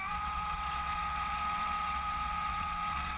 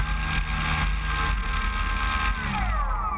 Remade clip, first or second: first